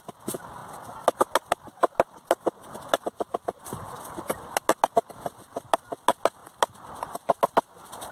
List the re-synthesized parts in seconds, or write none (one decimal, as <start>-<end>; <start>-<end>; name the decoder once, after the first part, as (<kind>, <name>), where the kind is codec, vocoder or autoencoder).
none

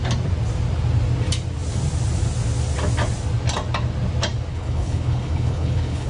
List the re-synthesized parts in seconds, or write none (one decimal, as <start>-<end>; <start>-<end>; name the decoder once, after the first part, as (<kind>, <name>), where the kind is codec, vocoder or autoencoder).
4.5-6.1 (codec, HILCodec)

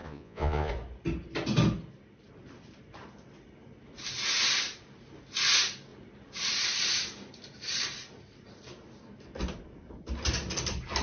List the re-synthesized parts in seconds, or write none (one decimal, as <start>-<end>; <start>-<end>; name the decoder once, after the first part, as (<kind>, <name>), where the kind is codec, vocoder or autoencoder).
0.0-0.7 (vocoder, Vocos)

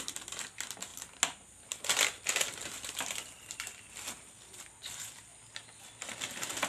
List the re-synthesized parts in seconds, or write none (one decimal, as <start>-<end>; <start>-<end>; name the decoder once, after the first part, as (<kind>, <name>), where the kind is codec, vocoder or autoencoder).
none

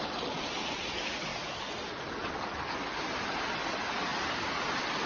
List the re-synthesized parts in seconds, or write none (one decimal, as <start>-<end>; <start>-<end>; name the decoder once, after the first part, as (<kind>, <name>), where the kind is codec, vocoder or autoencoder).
none

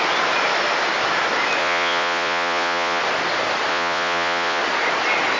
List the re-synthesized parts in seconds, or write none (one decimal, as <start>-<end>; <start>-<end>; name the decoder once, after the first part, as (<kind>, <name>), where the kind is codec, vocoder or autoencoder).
1.6-3.0 (vocoder, Vocos); 3.7-4.6